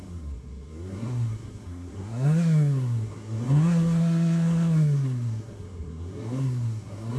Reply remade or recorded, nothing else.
remade